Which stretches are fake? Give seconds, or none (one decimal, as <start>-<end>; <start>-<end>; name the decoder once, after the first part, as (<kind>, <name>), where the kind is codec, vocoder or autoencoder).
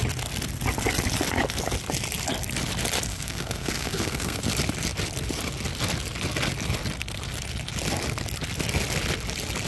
3.1-4.4 (codec, SNAC)